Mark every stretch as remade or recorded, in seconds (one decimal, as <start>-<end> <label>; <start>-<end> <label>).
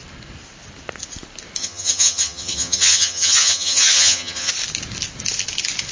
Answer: 0.0-1.6 recorded; 1.6-4.5 remade; 4.5-5.9 recorded